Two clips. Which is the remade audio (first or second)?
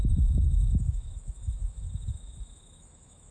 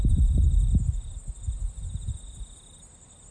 first